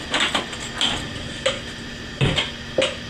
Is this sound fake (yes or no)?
no